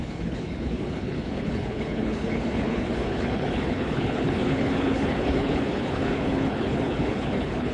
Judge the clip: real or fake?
fake